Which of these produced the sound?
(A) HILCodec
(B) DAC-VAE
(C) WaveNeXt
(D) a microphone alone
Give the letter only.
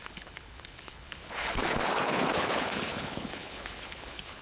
A